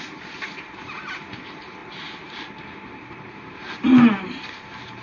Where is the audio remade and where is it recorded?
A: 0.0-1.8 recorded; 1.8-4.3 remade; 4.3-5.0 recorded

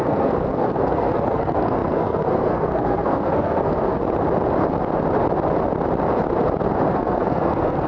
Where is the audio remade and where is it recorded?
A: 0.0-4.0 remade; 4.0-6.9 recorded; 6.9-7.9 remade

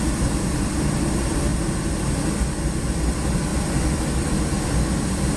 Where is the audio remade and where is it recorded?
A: 0.0-5.4 recorded

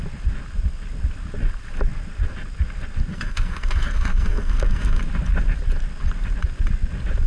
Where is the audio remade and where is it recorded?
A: 0.0-3.1 recorded; 3.1-5.0 remade; 5.0-7.3 recorded